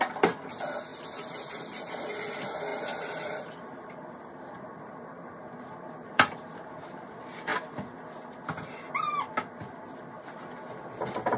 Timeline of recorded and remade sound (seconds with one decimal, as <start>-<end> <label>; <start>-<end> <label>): 0.0-0.9 recorded; 0.9-2.0 remade; 2.0-2.7 recorded; 2.7-6.7 remade; 6.7-11.4 recorded

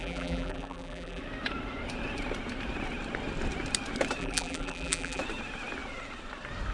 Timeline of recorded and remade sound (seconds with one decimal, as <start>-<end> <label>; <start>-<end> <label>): 0.0-1.2 remade; 1.2-4.2 recorded; 4.2-5.2 remade; 5.2-6.7 recorded

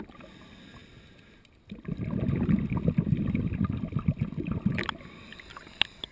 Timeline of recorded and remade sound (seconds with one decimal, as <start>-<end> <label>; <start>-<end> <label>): 0.0-5.3 recorded; 5.3-6.1 remade

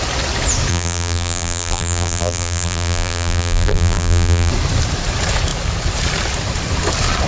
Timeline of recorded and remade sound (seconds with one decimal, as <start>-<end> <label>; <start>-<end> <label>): 0.0-0.7 recorded; 0.7-4.5 remade; 4.5-7.3 recorded